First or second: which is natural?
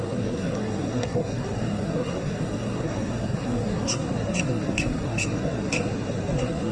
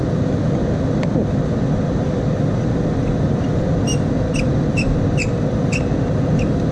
second